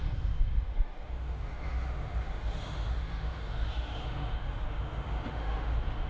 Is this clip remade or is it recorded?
remade